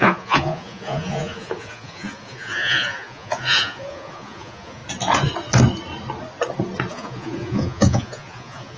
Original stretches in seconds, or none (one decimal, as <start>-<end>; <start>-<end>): 4.8-6.9

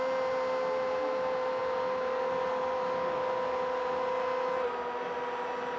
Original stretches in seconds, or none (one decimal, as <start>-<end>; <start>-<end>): 0.0-5.8

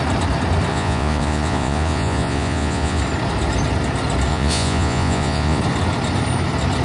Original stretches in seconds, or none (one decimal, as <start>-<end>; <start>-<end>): 0.0-0.7; 3.0-4.3; 5.6-6.8

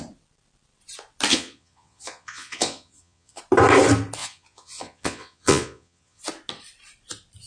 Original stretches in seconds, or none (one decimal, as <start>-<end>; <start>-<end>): 0.0-1.3; 3.4-4.2; 6.2-7.5

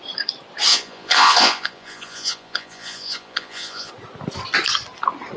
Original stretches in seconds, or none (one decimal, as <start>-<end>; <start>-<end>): 0.0-0.7; 3.9-5.4

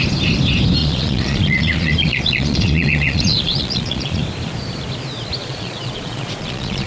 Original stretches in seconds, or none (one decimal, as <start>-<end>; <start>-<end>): 0.0-0.8; 4.2-5.4